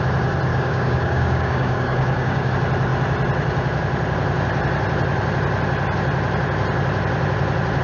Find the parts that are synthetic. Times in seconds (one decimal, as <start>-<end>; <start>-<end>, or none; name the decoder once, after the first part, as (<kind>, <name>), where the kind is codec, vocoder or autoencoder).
0.5-2.5 (codec, DAC)